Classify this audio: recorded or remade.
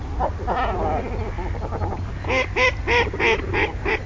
recorded